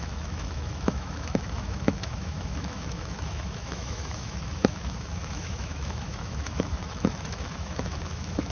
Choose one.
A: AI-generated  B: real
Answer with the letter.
A